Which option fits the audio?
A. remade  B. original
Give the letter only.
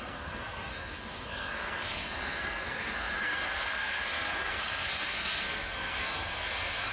A